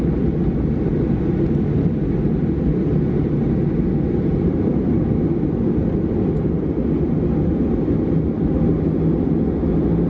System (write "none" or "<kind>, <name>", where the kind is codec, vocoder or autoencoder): none